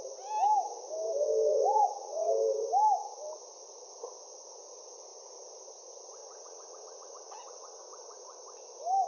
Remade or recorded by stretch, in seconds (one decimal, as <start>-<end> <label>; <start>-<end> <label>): 0.0-1.5 recorded; 1.5-2.3 remade; 2.3-6.2 recorded; 6.2-7.8 remade; 7.8-9.1 recorded